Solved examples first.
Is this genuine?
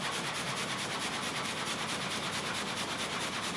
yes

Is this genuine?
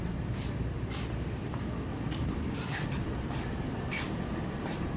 no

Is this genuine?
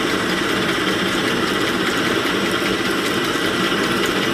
no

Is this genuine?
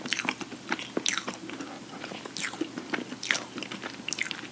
yes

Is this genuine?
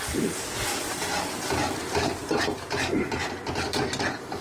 yes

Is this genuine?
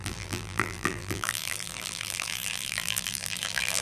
no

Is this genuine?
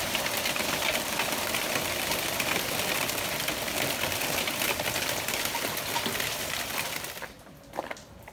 yes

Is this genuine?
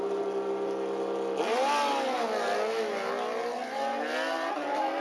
yes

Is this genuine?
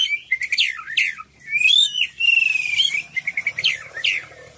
yes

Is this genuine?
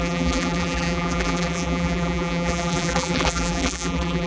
no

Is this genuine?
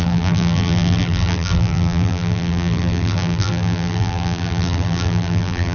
no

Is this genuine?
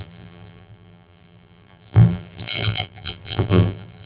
no